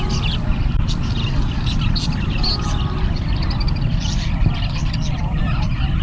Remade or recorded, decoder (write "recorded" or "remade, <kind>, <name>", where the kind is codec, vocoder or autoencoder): recorded